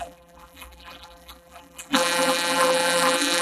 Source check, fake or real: fake